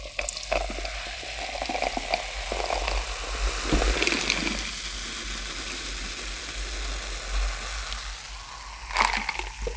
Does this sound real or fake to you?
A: real